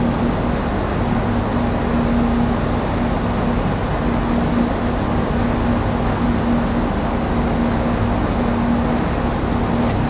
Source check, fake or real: real